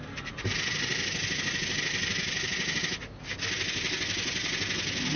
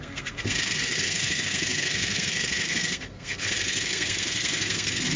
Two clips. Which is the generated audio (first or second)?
second